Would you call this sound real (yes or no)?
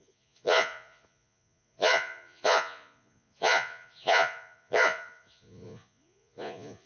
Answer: no